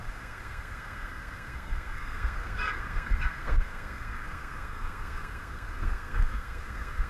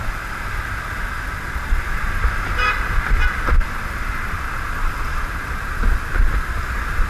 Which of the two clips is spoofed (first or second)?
first